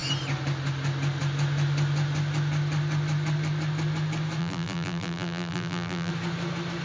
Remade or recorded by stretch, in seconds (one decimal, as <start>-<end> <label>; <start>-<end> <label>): 0.0-4.4 recorded; 4.4-6.1 remade; 6.1-6.8 recorded